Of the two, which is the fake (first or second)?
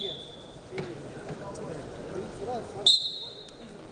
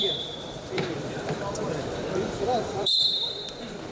second